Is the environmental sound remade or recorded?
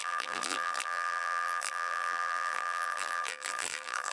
remade